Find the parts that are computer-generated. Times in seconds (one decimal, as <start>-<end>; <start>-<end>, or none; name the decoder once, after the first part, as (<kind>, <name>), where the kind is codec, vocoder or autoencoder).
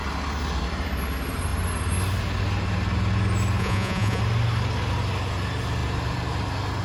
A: 3.6-4.2 (vocoder, Vocos)